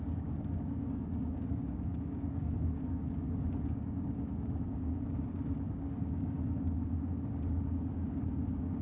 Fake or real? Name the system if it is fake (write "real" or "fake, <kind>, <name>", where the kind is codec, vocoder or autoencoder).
fake, codec, DAC